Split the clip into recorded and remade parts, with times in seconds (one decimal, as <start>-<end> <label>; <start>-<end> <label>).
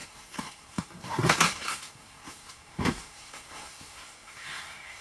0.0-5.0 remade